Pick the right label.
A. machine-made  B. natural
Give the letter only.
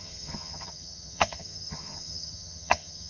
A